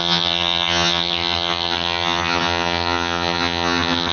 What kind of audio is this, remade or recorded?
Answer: remade